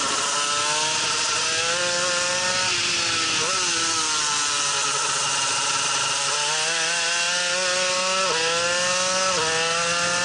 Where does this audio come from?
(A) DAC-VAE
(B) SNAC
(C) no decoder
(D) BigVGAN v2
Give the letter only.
C